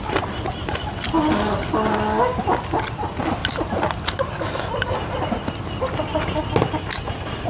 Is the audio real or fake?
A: real